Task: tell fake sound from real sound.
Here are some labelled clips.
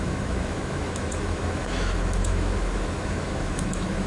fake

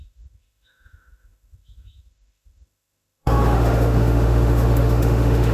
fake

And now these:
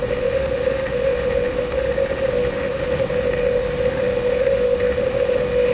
fake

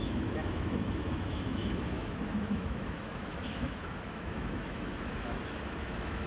fake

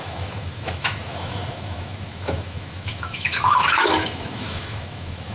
fake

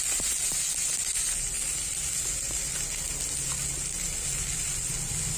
real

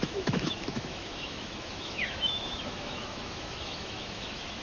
fake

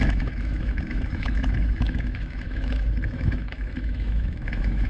fake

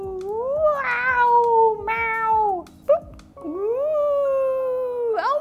real